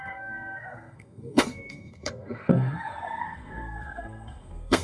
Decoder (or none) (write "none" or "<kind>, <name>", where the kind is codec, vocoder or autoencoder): codec, SNAC